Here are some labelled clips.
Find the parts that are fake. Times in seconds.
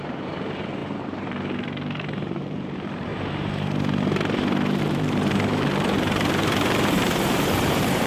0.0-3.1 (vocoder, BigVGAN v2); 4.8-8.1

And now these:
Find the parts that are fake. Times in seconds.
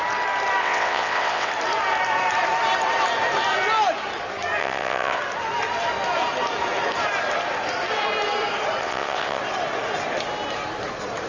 0.6-1.5 (vocoder, WaveNeXt); 4.6-5.2; 8.8-9.4